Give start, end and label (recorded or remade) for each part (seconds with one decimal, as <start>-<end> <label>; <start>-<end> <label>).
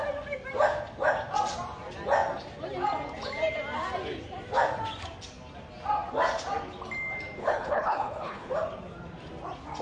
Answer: 0.0-7.4 recorded; 7.4-8.5 remade; 8.5-9.8 recorded